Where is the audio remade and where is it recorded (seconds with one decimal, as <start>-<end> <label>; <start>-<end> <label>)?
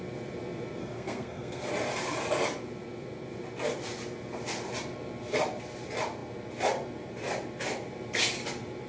0.0-0.8 recorded; 0.8-1.7 remade; 1.7-8.9 recorded